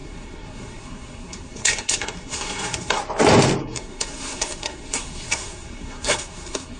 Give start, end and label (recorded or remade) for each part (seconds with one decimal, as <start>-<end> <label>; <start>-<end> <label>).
0.0-3.0 remade; 3.0-3.6 recorded; 3.6-6.8 remade

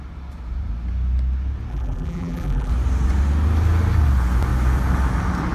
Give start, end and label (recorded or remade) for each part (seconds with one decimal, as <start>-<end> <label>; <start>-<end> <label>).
0.0-1.7 recorded; 1.7-2.7 remade; 2.7-5.5 recorded

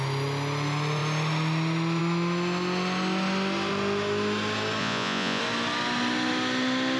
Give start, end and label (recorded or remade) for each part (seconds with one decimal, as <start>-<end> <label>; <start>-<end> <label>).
0.0-4.8 recorded; 4.8-5.4 remade; 5.4-7.0 recorded